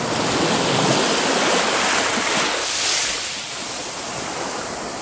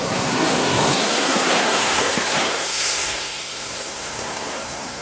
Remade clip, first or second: second